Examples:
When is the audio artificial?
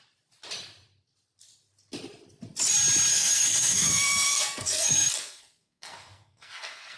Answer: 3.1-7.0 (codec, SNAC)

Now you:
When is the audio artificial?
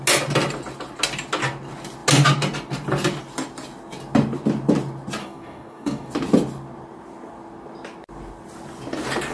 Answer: 5.2-6.1 (codec, DAC)